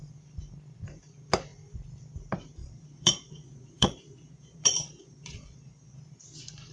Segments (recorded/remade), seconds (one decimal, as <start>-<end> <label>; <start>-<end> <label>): 0.0-2.6 recorded; 2.6-6.0 remade; 6.0-6.7 recorded